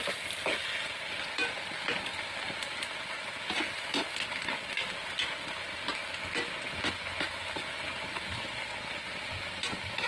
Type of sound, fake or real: real